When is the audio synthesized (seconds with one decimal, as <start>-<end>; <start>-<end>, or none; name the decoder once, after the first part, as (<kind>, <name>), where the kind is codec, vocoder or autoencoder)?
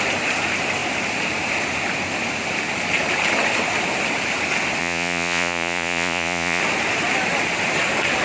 4.8-6.6 (vocoder, Vocos)